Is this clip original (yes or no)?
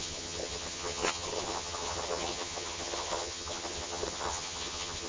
no